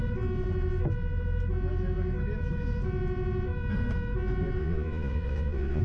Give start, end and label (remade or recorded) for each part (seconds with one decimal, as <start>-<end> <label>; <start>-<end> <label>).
0.0-4.6 recorded; 4.6-5.8 remade